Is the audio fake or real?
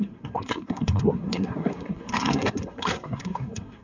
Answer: fake